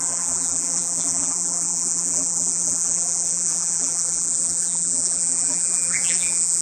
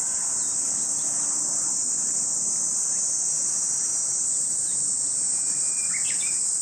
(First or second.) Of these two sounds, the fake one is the first